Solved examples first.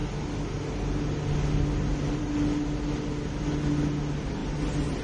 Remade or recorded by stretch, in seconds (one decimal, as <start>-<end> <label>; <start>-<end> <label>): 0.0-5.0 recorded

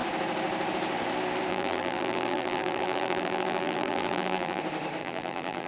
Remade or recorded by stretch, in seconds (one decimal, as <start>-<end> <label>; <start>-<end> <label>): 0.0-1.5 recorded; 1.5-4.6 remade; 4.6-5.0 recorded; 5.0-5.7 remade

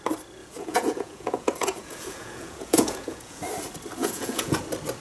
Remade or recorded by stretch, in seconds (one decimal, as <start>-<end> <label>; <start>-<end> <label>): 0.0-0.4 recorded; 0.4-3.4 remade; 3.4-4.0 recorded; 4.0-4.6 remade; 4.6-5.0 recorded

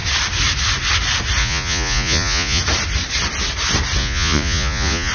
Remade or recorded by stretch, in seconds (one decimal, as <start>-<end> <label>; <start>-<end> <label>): 0.0-1.4 recorded; 1.4-2.6 remade; 2.6-4.0 recorded; 4.0-5.1 remade